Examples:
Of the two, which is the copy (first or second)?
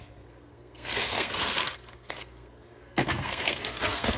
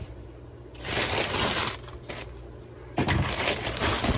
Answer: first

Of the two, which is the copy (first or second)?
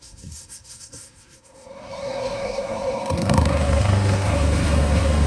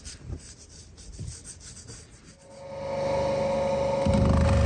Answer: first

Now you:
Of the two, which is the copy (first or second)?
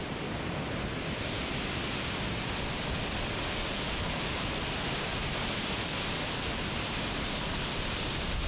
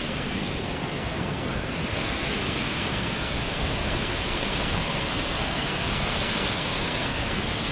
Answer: second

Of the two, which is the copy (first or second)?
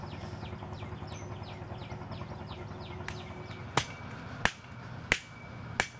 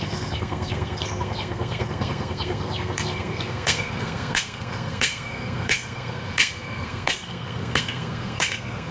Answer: second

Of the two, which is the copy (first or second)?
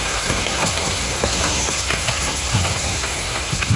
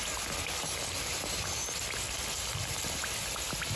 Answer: first